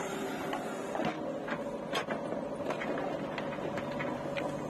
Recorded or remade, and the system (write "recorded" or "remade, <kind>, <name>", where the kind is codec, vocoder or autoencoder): recorded